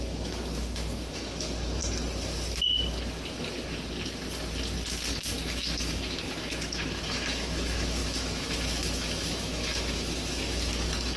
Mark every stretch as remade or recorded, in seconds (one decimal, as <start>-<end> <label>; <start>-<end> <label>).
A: 0.0-1.8 remade; 1.8-5.2 recorded; 5.2-11.2 remade